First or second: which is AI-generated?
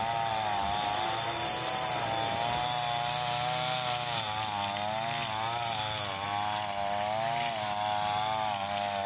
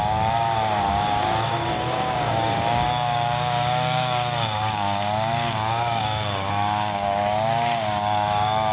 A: second